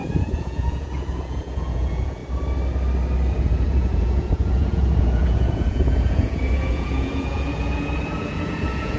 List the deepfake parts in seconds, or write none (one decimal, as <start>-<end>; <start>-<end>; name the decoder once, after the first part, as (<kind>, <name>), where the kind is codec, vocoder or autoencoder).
0.0-2.2 (vocoder, Vocos); 3.4-9.0